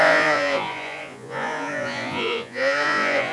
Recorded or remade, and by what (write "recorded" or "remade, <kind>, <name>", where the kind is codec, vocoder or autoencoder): remade, vocoder, Vocos